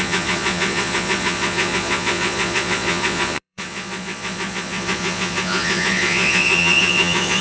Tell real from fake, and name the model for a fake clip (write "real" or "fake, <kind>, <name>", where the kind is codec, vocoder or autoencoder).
fake, vocoder, Vocos